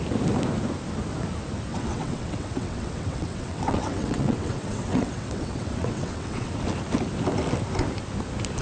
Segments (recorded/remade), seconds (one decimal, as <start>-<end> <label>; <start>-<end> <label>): 0.0-1.7 recorded; 1.7-6.5 remade; 6.5-8.6 recorded